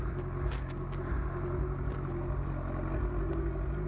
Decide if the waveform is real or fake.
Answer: real